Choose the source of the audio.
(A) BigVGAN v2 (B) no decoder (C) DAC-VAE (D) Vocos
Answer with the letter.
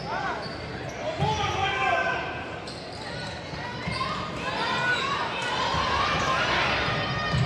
B